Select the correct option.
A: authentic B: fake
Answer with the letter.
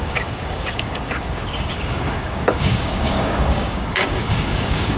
B